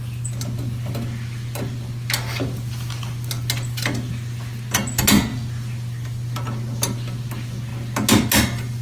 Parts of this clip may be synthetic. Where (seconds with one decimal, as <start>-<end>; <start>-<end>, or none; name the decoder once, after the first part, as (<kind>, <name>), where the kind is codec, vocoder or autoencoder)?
none